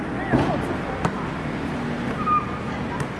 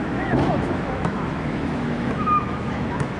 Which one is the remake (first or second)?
second